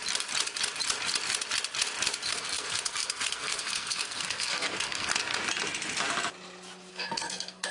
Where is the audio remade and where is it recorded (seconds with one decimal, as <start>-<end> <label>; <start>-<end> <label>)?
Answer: 0.0-2.3 recorded; 2.3-5.1 remade; 5.1-6.9 recorded; 6.9-7.7 remade